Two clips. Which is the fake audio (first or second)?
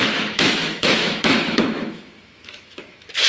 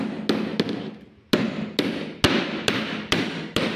first